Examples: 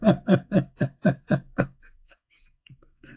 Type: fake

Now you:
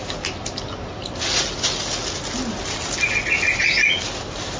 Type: real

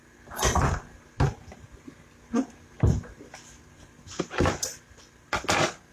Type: real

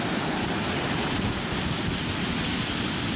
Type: real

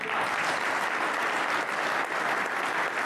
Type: real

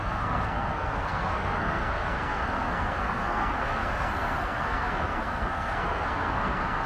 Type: fake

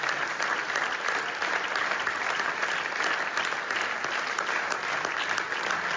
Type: real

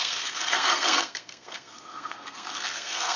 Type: fake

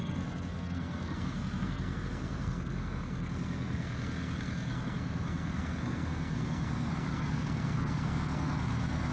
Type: fake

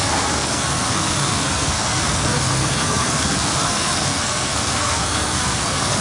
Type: fake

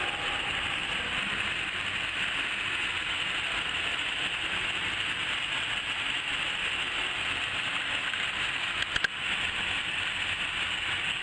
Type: real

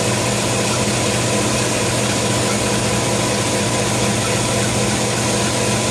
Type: real